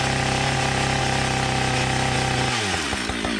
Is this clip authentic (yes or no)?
yes